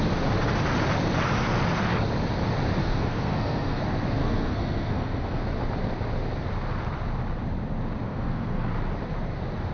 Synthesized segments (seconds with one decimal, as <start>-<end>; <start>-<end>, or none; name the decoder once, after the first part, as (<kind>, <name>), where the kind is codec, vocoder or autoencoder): 2.8-3.8 (codec, SNAC); 4.2-5.4; 8.1-8.7